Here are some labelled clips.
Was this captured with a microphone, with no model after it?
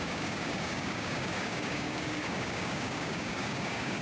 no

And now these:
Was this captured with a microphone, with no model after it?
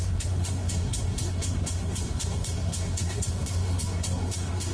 no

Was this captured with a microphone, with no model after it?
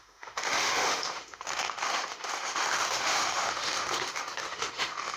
no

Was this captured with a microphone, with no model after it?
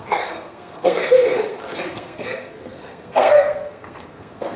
no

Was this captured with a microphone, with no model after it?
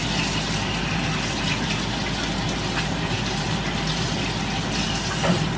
yes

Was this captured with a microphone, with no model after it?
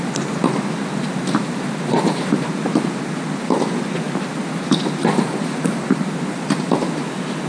yes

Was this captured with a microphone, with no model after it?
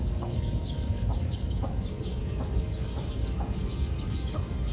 no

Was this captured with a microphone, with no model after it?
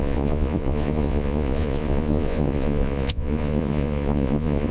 no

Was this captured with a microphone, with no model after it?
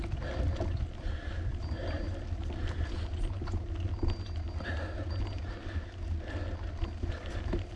yes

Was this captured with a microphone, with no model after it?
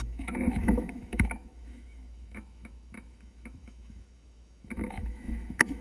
no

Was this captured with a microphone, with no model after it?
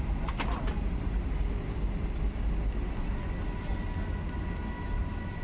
yes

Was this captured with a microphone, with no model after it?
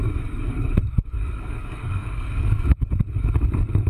no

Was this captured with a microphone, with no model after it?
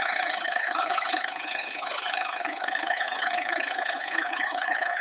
no